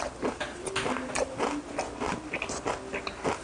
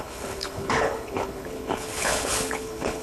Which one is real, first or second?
first